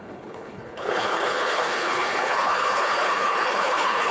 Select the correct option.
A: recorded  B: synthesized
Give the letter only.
B